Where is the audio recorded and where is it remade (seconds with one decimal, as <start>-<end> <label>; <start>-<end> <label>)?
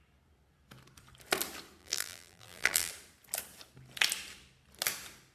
0.0-1.8 recorded; 1.8-2.9 remade; 2.9-5.3 recorded